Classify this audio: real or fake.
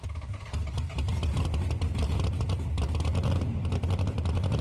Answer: real